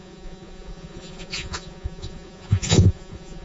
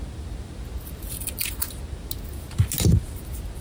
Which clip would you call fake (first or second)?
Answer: first